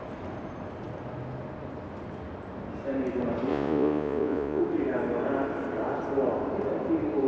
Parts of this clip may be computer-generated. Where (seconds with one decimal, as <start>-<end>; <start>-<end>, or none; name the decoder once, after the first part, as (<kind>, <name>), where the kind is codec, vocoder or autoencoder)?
3.5-4.6 (vocoder, Vocos)